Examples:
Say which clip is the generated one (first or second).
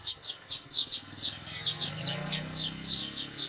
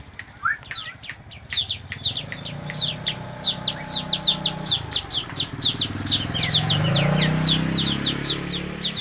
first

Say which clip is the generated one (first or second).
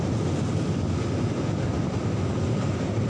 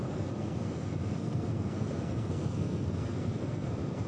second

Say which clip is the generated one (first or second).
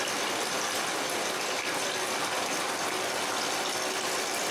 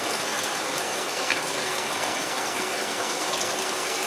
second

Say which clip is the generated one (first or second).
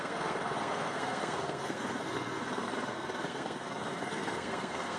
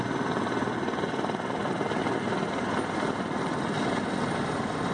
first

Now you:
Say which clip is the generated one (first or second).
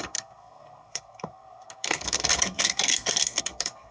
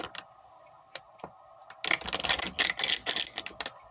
first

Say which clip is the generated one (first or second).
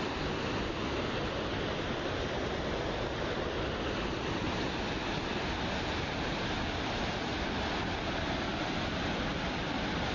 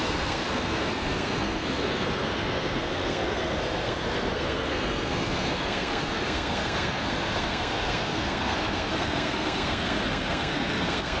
second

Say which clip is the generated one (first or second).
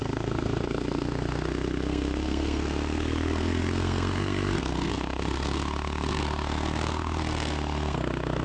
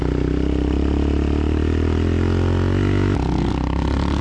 first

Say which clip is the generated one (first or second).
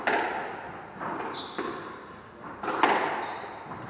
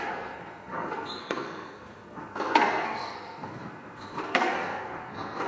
second